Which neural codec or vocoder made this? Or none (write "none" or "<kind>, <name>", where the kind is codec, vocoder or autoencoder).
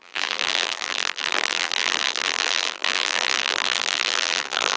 vocoder, BigVGAN v2